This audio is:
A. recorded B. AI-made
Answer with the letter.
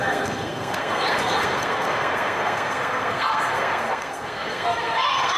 B